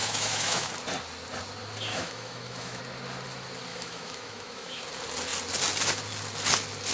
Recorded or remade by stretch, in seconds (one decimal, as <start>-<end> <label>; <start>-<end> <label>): 0.0-0.7 remade; 0.7-1.9 recorded; 1.9-2.8 remade; 2.8-3.7 recorded; 3.7-4.8 remade; 4.8-6.9 recorded